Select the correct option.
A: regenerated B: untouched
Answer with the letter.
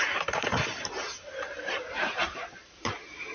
A